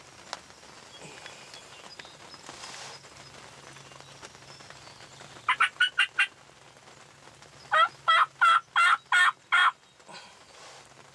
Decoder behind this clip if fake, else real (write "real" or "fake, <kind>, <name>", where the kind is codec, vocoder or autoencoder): real